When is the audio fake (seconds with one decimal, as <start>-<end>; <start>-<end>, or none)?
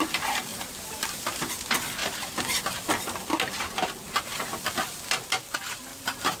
0.5-1.5; 2.0-2.9; 5.9-6.4